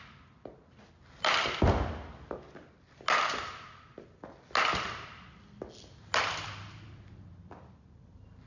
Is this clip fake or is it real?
real